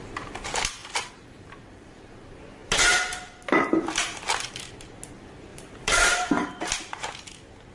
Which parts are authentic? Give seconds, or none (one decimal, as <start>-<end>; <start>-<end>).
0.0-0.8; 2.0-5.5; 6.5-7.7